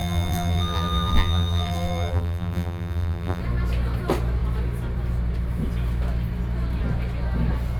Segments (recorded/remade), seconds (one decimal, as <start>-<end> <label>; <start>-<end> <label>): 0.0-3.4 remade; 3.4-7.8 recorded